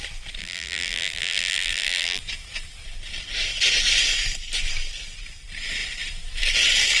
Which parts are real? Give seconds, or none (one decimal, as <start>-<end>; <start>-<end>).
0.0-0.4; 2.2-7.0